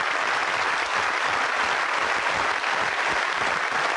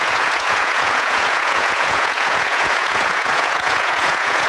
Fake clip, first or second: second